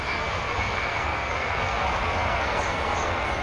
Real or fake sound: fake